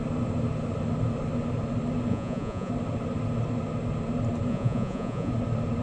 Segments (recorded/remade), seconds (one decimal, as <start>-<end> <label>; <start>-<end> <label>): 0.0-2.1 recorded; 2.1-2.7 remade; 2.7-4.5 recorded; 4.5-5.3 remade; 5.3-5.8 recorded